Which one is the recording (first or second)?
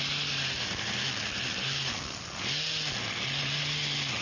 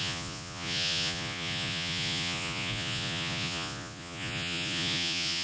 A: first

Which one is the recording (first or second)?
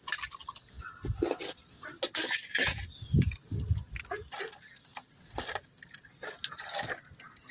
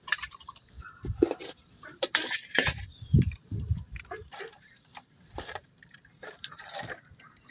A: first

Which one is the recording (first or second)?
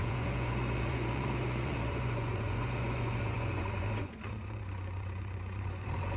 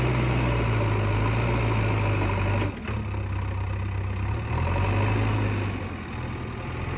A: second